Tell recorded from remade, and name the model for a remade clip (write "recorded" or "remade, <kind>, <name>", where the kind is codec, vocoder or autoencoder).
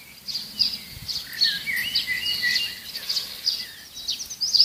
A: recorded